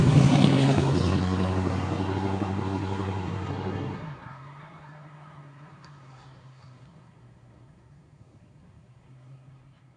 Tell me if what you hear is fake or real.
fake